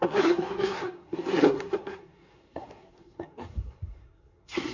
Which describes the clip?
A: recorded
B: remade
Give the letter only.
B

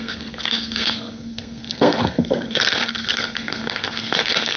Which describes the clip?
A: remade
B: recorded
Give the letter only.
A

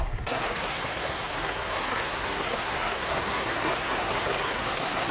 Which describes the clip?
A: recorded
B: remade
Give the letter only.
B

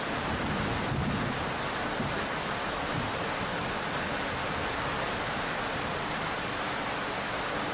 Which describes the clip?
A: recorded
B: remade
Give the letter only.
A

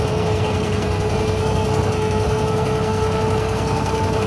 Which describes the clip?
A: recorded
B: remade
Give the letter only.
B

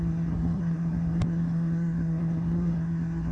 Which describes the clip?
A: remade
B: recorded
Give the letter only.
A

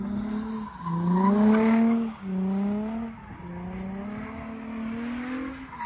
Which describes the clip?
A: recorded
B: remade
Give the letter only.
A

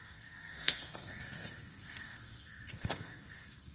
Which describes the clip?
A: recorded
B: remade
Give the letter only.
B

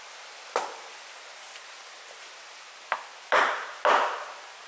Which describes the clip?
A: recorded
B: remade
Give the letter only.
A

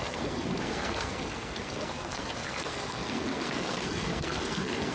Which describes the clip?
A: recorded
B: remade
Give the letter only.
B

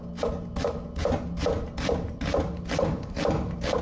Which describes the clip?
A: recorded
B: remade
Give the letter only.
A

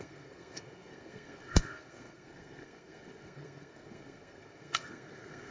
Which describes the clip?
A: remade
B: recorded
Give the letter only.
A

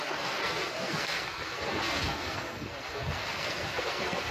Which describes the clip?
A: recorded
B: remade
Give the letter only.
B